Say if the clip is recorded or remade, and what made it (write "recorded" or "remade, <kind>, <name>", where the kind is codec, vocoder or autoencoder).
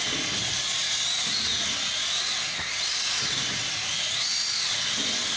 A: recorded